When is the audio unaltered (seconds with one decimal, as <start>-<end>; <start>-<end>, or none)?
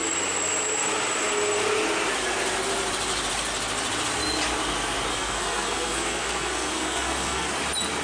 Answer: 0.0-5.1; 7.5-8.0